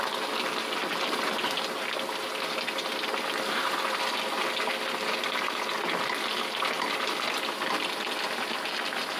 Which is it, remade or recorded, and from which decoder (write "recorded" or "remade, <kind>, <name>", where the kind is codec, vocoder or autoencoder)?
recorded